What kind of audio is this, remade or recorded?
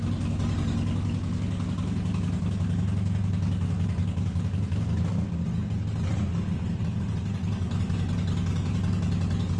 recorded